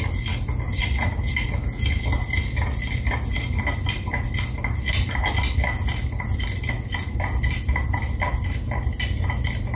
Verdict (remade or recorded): recorded